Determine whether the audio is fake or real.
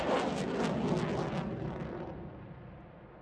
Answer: real